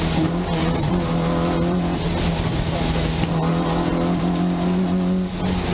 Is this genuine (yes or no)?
yes